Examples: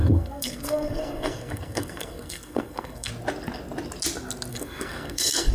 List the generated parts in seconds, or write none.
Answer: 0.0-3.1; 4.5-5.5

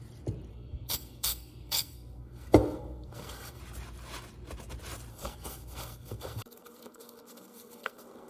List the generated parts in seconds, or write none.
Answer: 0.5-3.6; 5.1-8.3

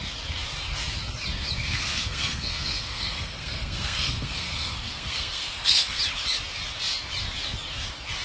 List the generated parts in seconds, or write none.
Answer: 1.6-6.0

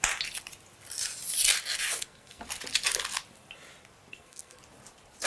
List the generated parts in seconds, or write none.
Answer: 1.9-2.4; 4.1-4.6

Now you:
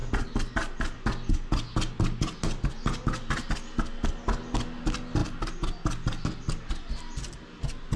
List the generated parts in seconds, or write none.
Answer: none

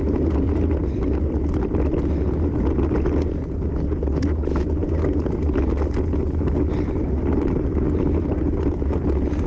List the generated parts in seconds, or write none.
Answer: none

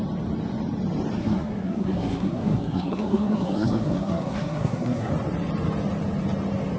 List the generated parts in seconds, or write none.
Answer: 1.2-5.1